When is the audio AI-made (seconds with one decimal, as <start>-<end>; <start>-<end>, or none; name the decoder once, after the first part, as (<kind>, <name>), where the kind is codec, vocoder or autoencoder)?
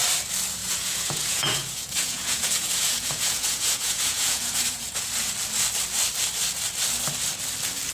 0.6-5.1 (vocoder, Vocos)